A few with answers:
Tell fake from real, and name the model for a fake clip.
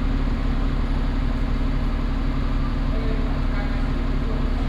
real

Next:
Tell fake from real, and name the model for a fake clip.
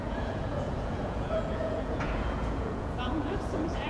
fake, vocoder, Vocos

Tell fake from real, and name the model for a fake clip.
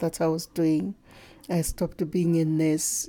real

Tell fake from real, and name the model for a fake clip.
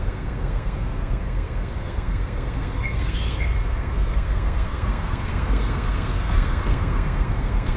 fake, codec, SNAC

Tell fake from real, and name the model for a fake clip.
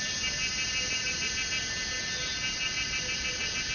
real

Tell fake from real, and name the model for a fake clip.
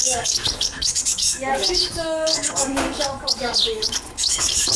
fake, codec, DAC